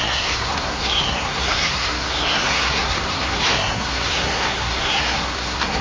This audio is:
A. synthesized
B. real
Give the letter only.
A